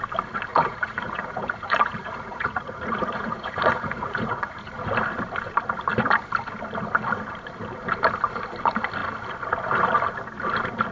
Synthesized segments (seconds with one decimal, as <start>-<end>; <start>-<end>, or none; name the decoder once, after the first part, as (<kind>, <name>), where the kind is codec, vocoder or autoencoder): 0.5-4.9 (vocoder, Vocos)